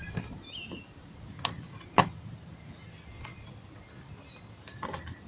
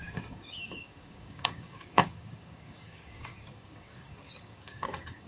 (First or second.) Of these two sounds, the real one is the first